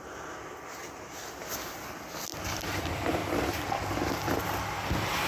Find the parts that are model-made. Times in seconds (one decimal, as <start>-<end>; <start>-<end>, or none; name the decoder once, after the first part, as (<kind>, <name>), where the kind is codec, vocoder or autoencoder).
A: none